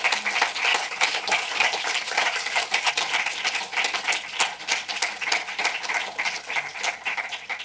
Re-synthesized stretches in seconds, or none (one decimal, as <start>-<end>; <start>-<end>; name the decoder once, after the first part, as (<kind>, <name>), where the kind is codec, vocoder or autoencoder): 0.7-2.9 (codec, DAC)